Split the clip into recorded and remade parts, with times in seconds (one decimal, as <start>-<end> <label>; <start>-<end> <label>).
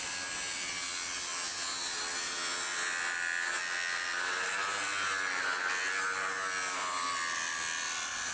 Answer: 0.0-8.3 recorded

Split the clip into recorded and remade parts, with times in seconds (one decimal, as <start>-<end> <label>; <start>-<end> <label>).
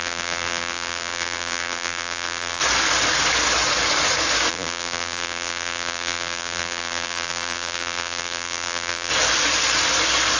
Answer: 0.0-2.6 remade; 2.6-4.5 recorded; 4.5-9.1 remade; 9.1-10.4 recorded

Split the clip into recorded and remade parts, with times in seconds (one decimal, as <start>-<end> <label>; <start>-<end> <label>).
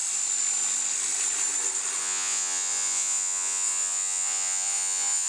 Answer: 0.0-2.0 recorded; 2.0-5.3 remade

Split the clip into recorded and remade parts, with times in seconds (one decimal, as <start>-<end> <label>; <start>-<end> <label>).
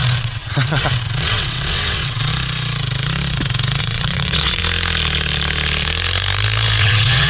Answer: 0.0-2.3 remade; 2.3-3.8 recorded; 3.8-4.6 remade; 4.6-6.8 recorded; 6.8-7.3 remade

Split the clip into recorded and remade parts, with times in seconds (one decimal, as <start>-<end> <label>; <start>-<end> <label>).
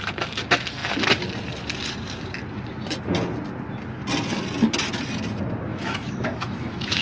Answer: 0.0-5.7 recorded; 5.7-7.0 remade